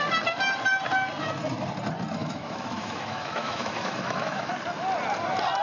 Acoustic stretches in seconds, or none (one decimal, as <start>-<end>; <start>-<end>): 0.0-2.2; 4.5-5.6